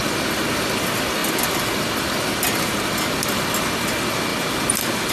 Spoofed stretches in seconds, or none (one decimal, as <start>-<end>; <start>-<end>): none